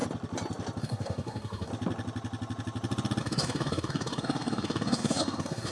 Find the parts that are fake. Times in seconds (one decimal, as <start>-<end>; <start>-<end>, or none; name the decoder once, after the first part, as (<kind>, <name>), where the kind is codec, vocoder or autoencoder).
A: 0.8-1.7 (codec, SNAC); 3.2-5.7

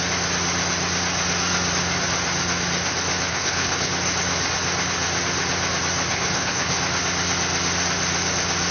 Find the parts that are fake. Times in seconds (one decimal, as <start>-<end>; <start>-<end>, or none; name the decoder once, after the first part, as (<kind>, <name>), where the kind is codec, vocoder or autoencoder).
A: 3.3-3.9 (codec, HILCodec); 6.1-6.8

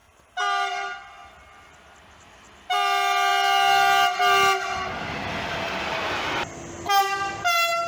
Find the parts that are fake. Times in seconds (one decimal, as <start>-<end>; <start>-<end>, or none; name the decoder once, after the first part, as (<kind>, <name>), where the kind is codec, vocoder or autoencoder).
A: none

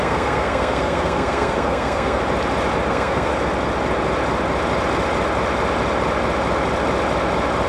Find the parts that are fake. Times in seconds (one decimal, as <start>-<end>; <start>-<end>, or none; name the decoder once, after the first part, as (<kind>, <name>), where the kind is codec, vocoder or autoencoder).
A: 0.0-2.2 (codec, SNAC); 2.9-3.3

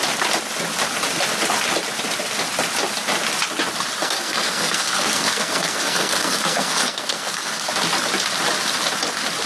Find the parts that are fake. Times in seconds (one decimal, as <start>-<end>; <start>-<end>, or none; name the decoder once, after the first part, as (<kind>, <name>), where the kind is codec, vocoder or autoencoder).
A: 4.0-7.7 (codec, SNAC)

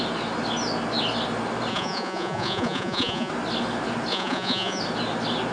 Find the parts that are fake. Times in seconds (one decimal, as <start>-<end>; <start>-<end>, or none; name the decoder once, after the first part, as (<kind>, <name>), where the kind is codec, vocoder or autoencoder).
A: 1.7-3.3 (vocoder, Vocos); 4.1-4.8

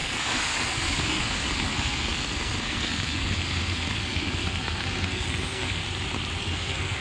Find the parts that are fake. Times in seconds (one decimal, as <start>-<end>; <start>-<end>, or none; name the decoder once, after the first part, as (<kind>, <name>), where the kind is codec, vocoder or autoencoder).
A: 0.0-5.8 (codec, SNAC); 6.4-7.0

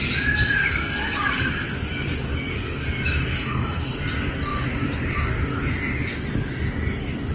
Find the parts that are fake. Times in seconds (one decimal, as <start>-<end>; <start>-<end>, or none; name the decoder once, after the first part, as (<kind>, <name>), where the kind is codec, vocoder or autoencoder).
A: 0.6-1.5 (codec, SNAC); 3.3-3.9